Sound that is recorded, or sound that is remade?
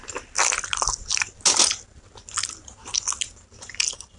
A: recorded